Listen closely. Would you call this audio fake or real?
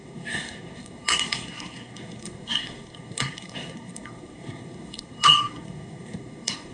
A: fake